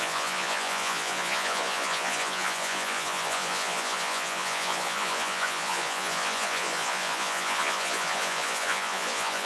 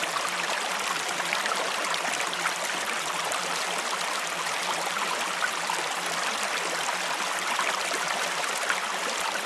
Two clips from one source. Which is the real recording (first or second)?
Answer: second